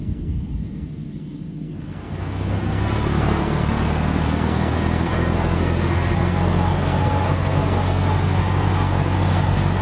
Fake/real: fake